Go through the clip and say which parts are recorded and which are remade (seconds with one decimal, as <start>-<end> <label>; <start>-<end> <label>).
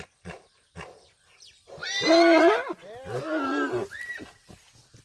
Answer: 0.0-5.0 recorded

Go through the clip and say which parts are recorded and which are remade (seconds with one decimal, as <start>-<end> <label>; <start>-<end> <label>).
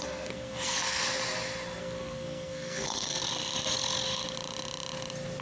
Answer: 0.0-1.0 remade; 1.0-1.8 recorded; 1.8-3.2 remade; 3.2-5.4 recorded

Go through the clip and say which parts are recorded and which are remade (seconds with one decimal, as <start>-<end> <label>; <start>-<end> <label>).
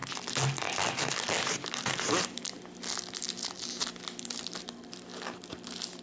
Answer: 0.0-6.0 recorded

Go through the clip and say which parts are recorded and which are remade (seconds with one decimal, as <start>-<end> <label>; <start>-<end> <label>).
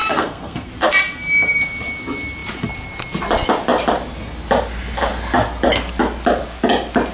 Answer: 0.0-0.7 remade; 0.7-7.1 recorded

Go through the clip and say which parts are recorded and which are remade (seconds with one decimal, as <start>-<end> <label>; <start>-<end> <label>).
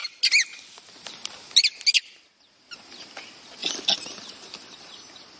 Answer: 0.0-3.6 recorded; 3.6-5.4 remade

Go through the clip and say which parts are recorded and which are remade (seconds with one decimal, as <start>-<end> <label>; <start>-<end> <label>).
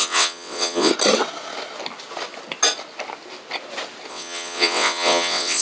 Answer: 0.0-0.9 remade; 0.9-4.1 recorded; 4.1-5.6 remade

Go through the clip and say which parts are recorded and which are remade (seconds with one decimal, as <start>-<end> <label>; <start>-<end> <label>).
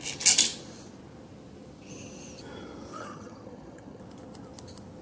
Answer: 0.0-2.9 recorded; 2.9-4.0 remade; 4.0-5.0 recorded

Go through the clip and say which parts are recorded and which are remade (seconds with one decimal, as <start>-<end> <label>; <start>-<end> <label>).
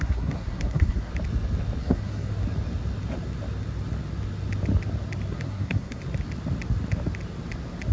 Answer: 0.0-1.1 remade; 1.1-1.8 recorded; 1.8-2.3 remade; 2.3-5.3 recorded; 5.3-6.0 remade; 6.0-7.9 recorded